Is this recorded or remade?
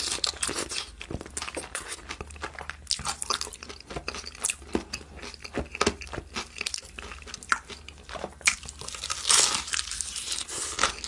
recorded